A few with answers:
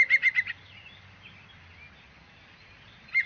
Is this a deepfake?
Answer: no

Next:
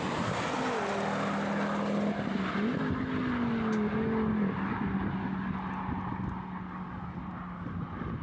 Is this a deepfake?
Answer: no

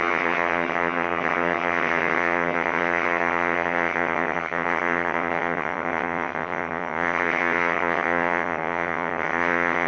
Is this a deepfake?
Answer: yes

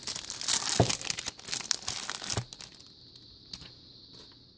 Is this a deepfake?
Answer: no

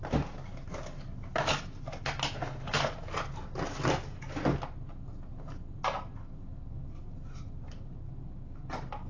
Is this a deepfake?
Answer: no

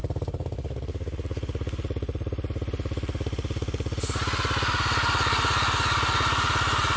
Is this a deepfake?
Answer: no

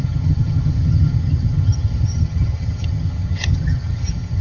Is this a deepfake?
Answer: yes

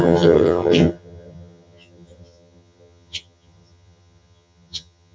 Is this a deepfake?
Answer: yes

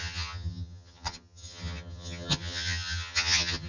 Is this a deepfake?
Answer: yes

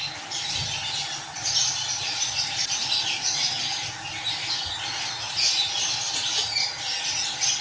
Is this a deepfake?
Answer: no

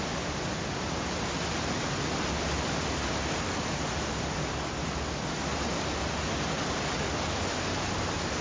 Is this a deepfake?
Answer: no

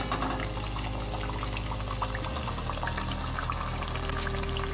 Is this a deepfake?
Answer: no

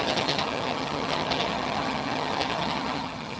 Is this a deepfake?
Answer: yes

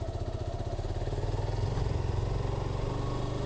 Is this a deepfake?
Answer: no